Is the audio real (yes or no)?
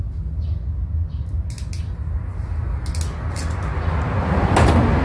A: yes